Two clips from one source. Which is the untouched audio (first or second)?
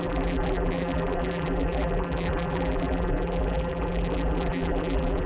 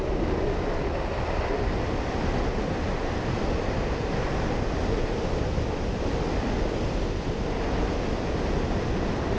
second